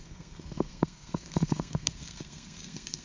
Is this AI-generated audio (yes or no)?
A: yes